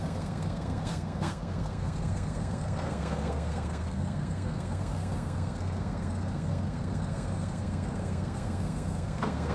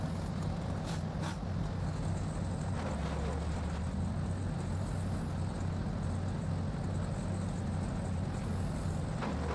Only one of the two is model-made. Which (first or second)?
first